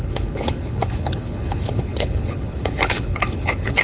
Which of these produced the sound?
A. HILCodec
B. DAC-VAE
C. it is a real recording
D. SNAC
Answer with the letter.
A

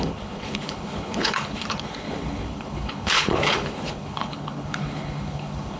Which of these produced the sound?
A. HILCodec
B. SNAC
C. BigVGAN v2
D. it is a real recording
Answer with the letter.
A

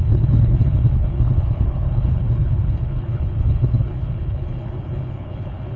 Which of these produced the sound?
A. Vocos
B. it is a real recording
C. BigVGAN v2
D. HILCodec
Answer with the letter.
D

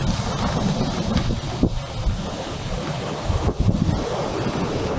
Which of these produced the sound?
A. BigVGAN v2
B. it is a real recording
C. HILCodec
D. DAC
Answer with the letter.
B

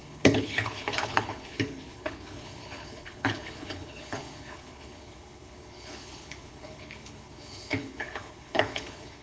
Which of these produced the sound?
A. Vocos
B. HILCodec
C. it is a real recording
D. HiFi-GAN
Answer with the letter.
B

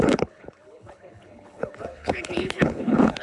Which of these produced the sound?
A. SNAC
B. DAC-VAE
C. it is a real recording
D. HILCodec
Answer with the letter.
D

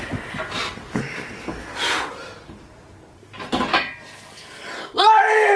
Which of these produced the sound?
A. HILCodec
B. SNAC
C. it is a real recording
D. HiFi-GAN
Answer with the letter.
C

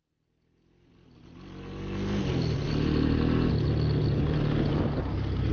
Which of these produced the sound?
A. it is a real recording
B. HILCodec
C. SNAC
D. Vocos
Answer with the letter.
A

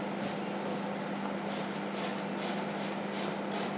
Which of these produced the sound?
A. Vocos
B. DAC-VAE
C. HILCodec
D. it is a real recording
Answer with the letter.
D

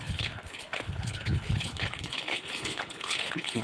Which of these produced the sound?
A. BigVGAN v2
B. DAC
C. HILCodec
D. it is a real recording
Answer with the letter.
C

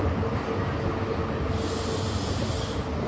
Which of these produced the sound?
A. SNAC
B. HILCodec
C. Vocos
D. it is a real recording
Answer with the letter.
D